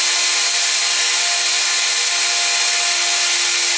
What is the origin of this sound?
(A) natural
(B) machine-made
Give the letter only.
A